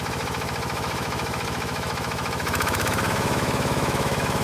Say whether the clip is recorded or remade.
remade